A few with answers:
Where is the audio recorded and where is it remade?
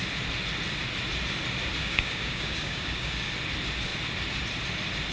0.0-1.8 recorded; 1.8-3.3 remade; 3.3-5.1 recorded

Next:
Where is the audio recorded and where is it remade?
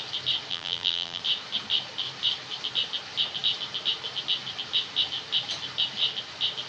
0.0-0.5 recorded; 0.5-1.2 remade; 1.2-6.7 recorded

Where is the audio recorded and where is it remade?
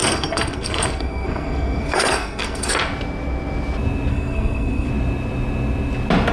0.0-2.7 remade; 2.7-4.1 recorded; 4.1-4.9 remade; 4.9-6.3 recorded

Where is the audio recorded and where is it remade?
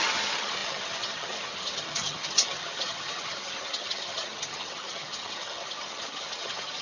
0.0-6.8 remade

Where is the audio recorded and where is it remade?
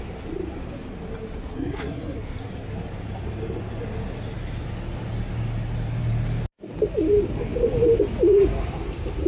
0.0-1.4 recorded; 1.4-2.5 remade; 2.5-9.3 recorded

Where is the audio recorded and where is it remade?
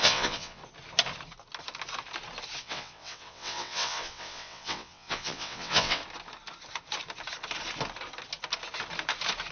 0.0-0.6 remade; 0.6-2.6 recorded; 2.6-6.0 remade; 6.0-9.5 recorded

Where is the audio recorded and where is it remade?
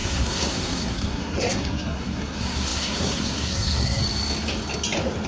0.0-4.0 remade; 4.0-5.3 recorded